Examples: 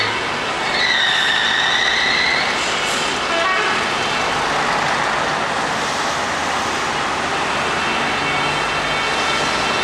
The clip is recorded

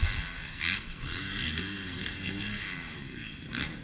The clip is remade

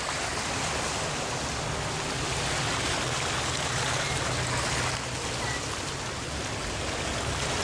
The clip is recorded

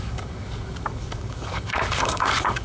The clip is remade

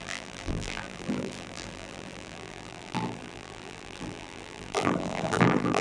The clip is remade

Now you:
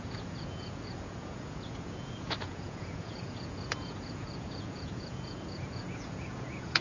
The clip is remade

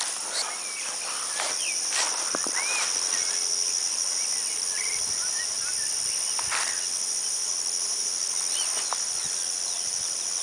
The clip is recorded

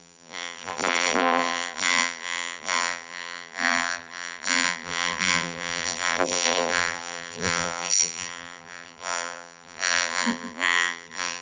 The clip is remade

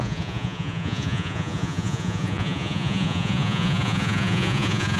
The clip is remade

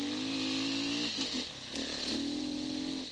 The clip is recorded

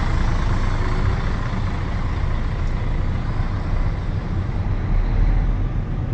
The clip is recorded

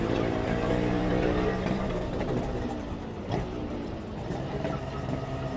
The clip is remade